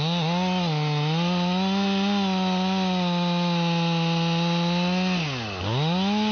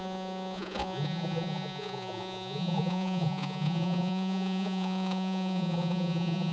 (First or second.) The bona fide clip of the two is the first